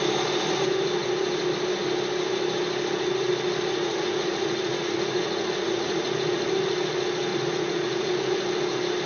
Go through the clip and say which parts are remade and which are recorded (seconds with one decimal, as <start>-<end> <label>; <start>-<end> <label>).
0.0-3.8 recorded; 3.8-6.5 remade; 6.5-7.3 recorded; 7.3-8.1 remade; 8.1-9.1 recorded